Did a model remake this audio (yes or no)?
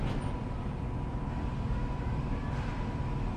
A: yes